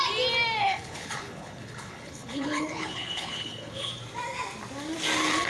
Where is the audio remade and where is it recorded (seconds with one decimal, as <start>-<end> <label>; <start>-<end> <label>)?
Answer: 0.0-0.6 recorded; 0.6-3.9 remade; 3.9-5.5 recorded